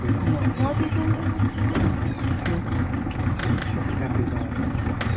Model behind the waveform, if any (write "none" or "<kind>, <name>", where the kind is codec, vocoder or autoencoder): none